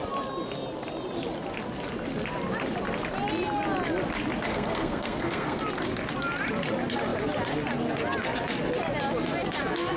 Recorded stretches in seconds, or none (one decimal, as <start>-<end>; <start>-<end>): 0.0-4.5; 5.6-10.0